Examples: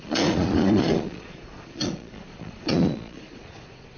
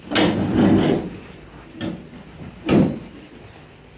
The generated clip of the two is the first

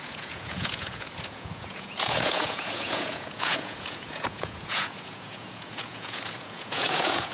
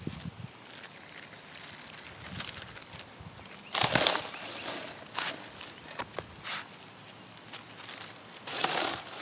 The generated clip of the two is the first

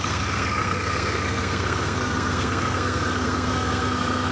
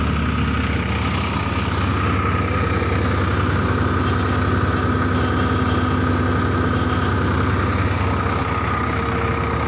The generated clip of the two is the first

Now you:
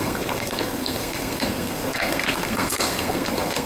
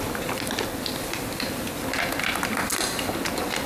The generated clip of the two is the first